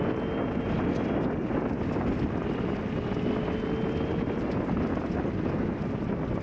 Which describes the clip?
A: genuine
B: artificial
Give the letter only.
A